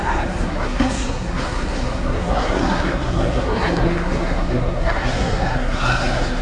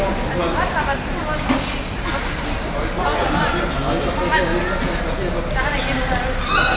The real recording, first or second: second